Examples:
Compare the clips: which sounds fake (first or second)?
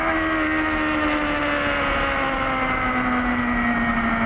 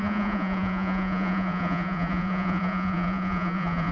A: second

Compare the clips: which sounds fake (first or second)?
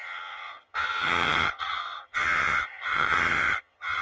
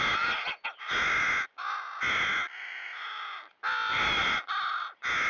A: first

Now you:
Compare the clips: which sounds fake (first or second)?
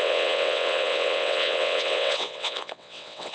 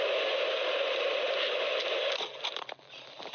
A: first